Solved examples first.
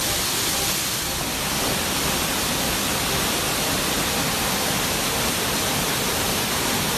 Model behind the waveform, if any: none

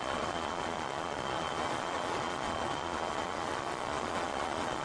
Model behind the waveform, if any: vocoder, Vocos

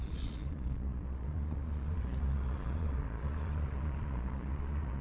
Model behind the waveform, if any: vocoder, Vocos